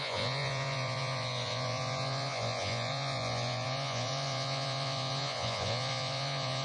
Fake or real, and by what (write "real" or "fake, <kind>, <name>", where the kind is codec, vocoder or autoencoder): fake, vocoder, Vocos